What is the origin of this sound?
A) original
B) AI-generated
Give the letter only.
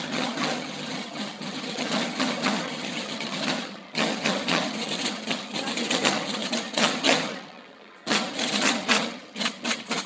B